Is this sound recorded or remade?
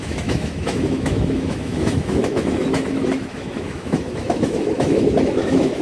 remade